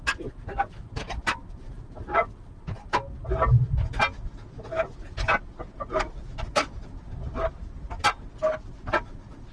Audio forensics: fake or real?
real